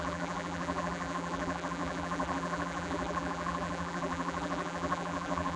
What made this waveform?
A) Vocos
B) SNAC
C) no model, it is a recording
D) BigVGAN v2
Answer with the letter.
D